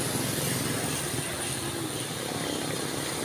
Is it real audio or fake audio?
real